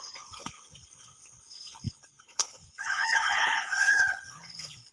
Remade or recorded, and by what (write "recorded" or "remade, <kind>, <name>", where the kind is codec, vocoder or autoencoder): remade, codec, HILCodec